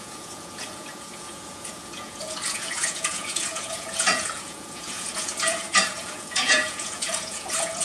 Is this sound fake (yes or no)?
yes